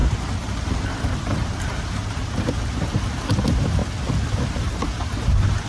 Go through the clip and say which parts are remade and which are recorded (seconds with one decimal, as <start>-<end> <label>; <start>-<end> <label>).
0.0-3.8 remade; 3.8-4.5 recorded; 4.5-5.7 remade